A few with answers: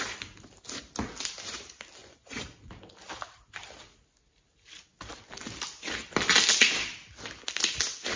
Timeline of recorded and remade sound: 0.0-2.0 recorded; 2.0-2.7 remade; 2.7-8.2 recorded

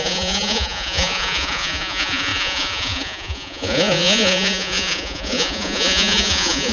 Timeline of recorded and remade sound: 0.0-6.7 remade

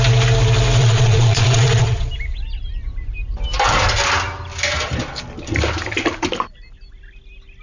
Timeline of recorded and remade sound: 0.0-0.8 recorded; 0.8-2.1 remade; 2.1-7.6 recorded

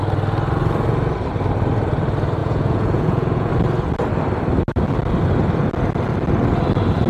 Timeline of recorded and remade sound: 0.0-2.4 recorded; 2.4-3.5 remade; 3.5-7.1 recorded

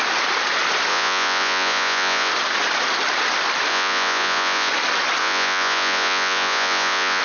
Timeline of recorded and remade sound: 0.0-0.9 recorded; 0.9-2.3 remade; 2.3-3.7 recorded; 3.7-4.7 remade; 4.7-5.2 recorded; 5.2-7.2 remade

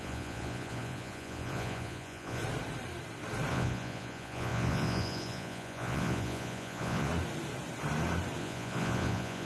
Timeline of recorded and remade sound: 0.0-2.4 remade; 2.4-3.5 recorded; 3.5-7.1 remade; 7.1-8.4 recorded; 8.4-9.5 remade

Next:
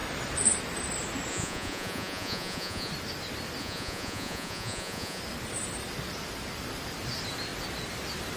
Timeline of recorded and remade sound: 0.0-1.3 recorded; 1.3-2.9 remade; 2.9-3.6 recorded; 3.6-5.2 remade; 5.2-8.4 recorded

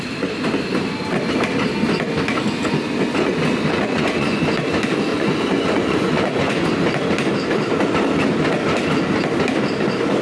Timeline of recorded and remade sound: 0.0-3.7 recorded; 3.7-4.4 remade; 4.4-5.1 recorded; 5.1-6.7 remade; 6.7-10.2 recorded